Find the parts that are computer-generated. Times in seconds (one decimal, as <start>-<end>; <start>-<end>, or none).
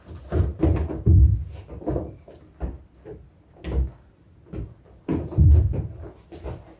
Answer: none